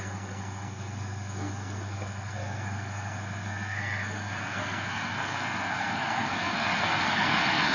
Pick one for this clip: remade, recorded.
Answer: remade